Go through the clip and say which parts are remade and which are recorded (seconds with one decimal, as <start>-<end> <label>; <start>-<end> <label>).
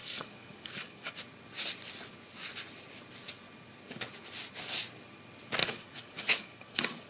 0.0-1.1 remade; 1.1-5.6 recorded; 5.6-7.1 remade